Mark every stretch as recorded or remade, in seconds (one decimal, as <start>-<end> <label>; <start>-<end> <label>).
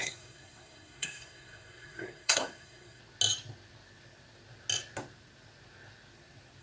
0.0-3.0 remade; 3.0-6.6 recorded